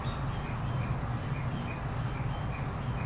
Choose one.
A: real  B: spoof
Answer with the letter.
A